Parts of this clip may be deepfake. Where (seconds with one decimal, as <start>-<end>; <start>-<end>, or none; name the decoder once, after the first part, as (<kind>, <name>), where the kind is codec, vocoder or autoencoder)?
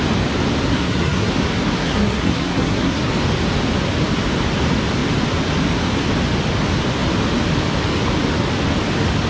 0.7-1.3 (codec, SNAC); 1.8-3.1